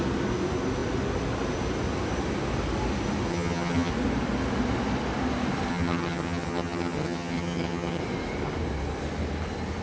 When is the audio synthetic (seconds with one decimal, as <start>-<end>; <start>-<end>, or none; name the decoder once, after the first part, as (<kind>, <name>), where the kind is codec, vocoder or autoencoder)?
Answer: 3.3-3.9 (vocoder, HiFi-GAN); 5.7-8.0